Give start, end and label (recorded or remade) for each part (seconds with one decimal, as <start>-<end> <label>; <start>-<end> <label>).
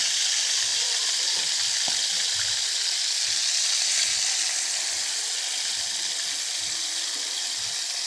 0.0-0.7 recorded; 0.7-1.6 remade; 1.6-8.1 recorded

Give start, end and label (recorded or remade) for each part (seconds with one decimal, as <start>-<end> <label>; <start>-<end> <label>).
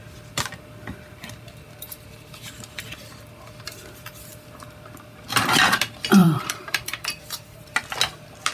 0.0-6.2 recorded; 6.2-7.7 remade; 7.7-8.5 recorded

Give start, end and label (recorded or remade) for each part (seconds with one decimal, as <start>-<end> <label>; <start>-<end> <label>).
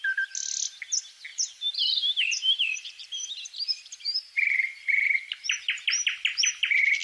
0.0-1.3 recorded; 1.3-5.3 remade; 5.3-7.0 recorded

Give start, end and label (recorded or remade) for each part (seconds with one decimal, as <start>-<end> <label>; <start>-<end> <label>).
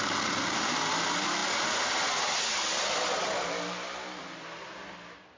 0.0-5.4 recorded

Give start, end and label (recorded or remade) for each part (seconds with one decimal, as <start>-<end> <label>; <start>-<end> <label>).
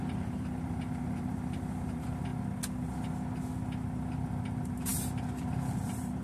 0.0-2.3 remade; 2.3-4.2 recorded; 4.2-6.2 remade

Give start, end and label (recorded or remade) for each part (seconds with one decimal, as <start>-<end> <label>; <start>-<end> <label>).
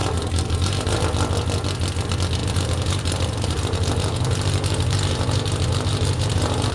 0.0-1.0 remade; 1.0-2.4 recorded; 2.4-6.7 remade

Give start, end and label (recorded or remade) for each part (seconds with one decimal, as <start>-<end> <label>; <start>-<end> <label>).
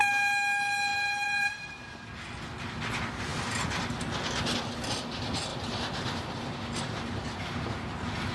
0.0-0.9 recorded; 0.9-1.9 remade; 1.9-5.5 recorded; 5.5-8.3 remade